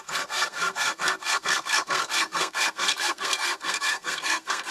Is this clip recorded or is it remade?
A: remade